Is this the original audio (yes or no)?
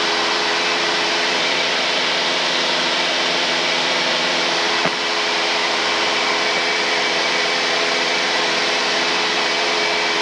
no